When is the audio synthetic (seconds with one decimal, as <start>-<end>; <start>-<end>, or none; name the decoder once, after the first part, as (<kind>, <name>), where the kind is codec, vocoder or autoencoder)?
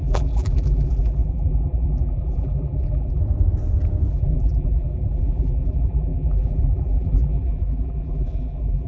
0.0-3.2 (vocoder, BigVGAN v2); 4.1-8.9